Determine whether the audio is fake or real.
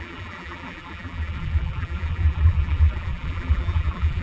fake